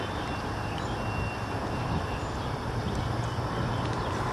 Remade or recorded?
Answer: recorded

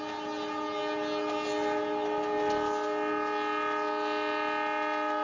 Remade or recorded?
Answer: recorded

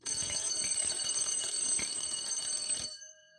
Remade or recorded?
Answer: remade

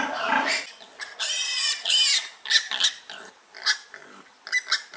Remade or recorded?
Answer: recorded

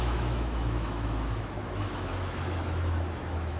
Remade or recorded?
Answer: remade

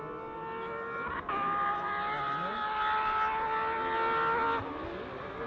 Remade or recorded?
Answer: recorded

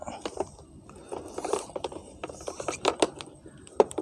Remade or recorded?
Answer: recorded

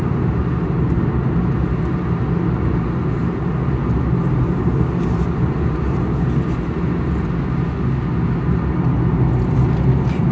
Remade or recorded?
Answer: recorded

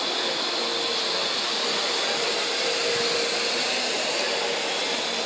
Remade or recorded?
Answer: recorded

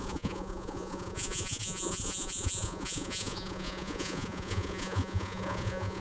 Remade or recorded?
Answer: remade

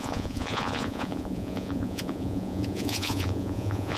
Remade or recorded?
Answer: remade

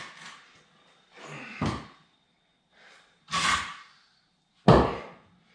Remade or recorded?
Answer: recorded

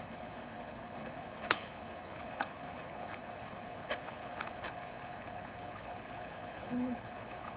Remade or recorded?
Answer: remade